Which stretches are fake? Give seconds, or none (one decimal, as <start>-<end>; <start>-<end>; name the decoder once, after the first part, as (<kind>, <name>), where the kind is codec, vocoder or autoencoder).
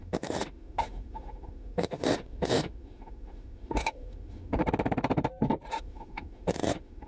0.0-4.6 (autoencoder, DAC-VAE); 5.7-7.1